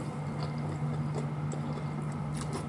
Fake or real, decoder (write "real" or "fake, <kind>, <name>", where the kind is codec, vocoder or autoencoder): real